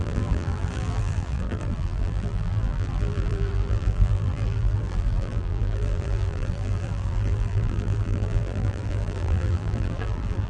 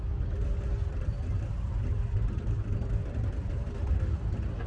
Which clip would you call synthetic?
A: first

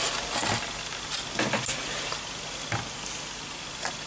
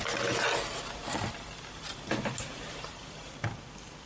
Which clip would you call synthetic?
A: second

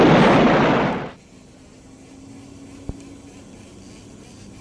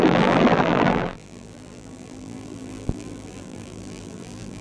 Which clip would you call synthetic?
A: second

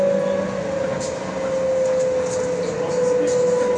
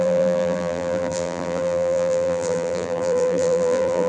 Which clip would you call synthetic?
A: second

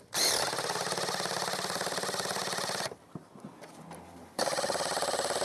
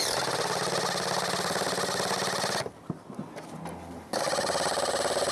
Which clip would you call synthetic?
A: first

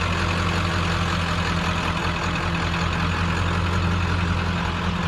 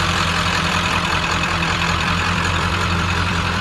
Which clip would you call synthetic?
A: second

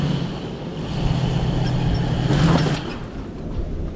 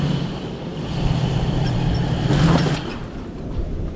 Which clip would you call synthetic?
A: second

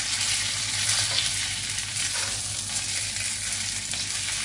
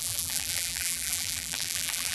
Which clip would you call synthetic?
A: second